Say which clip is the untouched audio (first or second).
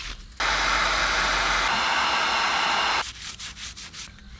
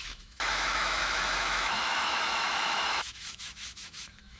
first